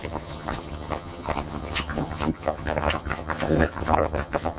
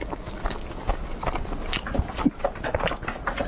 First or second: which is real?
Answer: second